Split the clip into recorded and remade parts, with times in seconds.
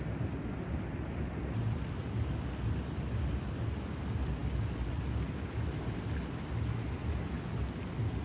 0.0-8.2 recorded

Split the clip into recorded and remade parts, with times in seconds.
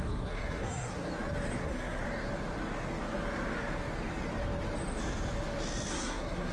0.0-1.1 remade; 1.1-1.6 recorded; 1.6-2.0 remade; 2.0-5.9 recorded; 5.9-6.5 remade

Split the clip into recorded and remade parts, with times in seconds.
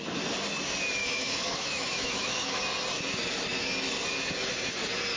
0.0-1.0 recorded; 1.0-2.6 remade; 2.6-5.2 recorded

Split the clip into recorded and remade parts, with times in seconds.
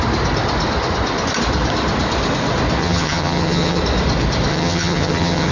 0.0-2.8 recorded; 2.8-3.8 remade; 3.8-4.5 recorded; 4.5-5.5 remade